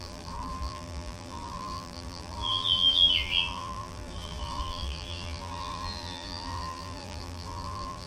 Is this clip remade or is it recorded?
remade